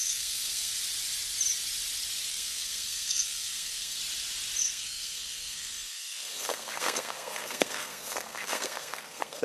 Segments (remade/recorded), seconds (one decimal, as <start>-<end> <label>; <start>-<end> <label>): 0.0-0.7 remade; 0.7-2.3 recorded; 2.3-4.0 remade; 4.0-4.6 recorded; 4.6-9.4 remade